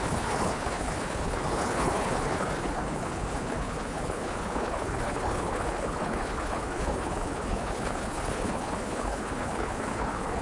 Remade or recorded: remade